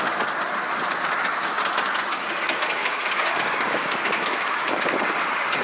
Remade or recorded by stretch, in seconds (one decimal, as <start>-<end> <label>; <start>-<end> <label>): 0.0-2.8 recorded; 2.8-5.0 remade; 5.0-5.6 recorded

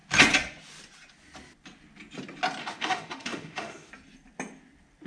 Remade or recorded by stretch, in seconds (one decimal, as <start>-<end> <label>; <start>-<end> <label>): 0.0-2.6 recorded; 2.6-3.9 remade; 3.9-5.1 recorded

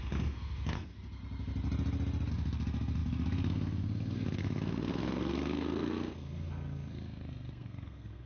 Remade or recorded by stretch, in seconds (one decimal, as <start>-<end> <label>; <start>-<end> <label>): 0.0-1.2 remade; 1.2-2.3 recorded; 2.3-8.3 remade

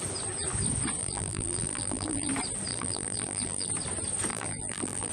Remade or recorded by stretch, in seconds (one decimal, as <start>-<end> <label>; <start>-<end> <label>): 0.0-1.0 recorded; 1.0-2.3 remade; 2.3-2.7 recorded; 2.7-3.7 remade; 3.7-4.3 recorded; 4.3-5.1 remade

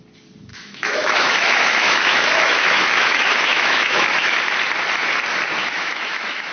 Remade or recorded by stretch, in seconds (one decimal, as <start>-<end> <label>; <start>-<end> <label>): 0.0-0.5 recorded; 0.5-4.4 remade; 4.4-5.6 recorded; 5.6-6.5 remade

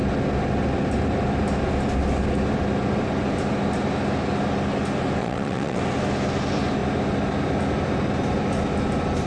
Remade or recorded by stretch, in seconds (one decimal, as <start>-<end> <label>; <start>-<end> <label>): 0.0-5.2 recorded; 5.2-5.8 remade; 5.8-9.3 recorded

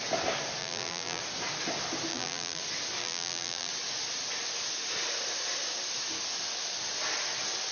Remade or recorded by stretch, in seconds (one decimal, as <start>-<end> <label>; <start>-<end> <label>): 0.0-0.6 recorded; 0.6-1.2 remade; 1.2-2.1 recorded; 2.1-2.6 remade; 2.6-3.0 recorded; 3.0-3.7 remade; 3.7-7.7 recorded